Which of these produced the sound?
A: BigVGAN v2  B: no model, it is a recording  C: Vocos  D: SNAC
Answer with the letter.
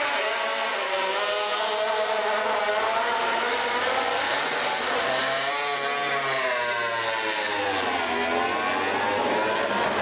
B